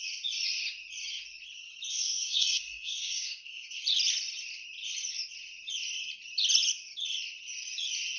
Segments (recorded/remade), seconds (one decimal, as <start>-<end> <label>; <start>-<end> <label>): 0.0-1.9 recorded; 1.9-3.8 remade; 3.8-8.2 recorded